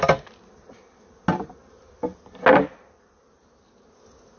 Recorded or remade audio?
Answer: recorded